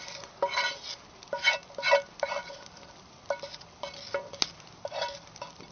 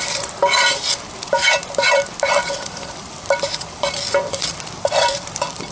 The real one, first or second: first